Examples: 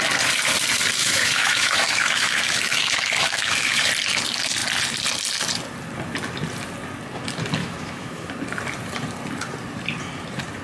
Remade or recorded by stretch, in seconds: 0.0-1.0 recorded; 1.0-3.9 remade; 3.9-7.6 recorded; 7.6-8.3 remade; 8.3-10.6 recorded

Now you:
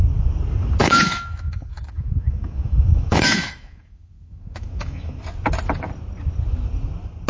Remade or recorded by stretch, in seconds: 0.0-0.8 recorded; 0.8-5.2 remade; 5.2-7.3 recorded

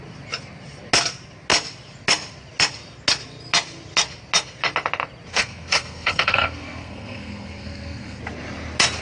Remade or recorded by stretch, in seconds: 0.0-5.3 recorded; 5.3-8.2 remade; 8.2-9.0 recorded

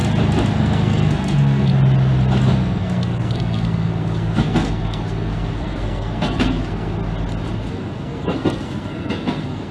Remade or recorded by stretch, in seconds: 0.0-0.6 recorded; 0.6-1.7 remade; 1.7-2.4 recorded; 2.4-7.0 remade; 7.0-7.7 recorded; 7.7-9.7 remade